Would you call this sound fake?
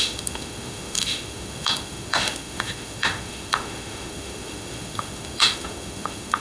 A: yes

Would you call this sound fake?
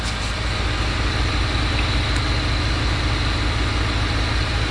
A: no